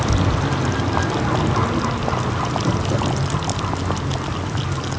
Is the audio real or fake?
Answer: real